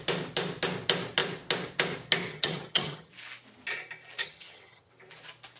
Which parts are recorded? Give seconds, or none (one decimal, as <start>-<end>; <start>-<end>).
0.0-2.3; 3.1-4.2; 4.9-5.6